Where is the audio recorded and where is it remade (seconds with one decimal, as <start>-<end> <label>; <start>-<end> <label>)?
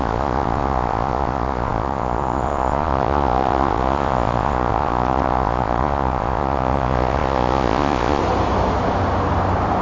0.0-8.2 remade; 8.2-9.8 recorded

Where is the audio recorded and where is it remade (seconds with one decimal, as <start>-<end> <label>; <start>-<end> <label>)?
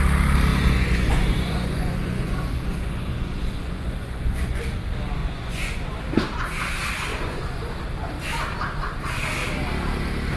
0.0-0.5 recorded; 0.5-4.6 remade; 4.6-5.2 recorded; 5.2-6.0 remade; 6.0-7.1 recorded; 7.1-7.7 remade; 7.7-10.4 recorded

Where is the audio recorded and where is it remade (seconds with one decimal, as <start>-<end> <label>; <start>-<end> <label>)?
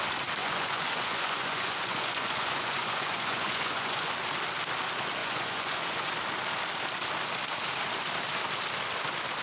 0.0-0.4 recorded; 0.4-4.1 remade; 4.1-5.2 recorded; 5.2-6.1 remade; 6.1-9.4 recorded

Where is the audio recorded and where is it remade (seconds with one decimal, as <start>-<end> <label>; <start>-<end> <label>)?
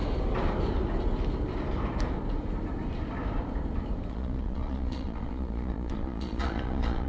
0.0-4.1 recorded; 4.1-7.1 remade